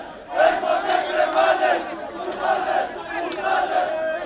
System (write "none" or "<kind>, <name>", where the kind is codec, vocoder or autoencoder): none